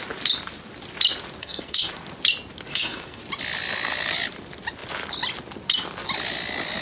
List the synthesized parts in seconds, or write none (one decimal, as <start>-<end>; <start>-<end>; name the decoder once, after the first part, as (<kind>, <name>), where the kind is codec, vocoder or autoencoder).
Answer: 1.4-1.9 (codec, SNAC); 2.7-3.2